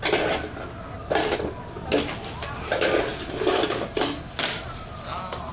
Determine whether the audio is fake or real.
real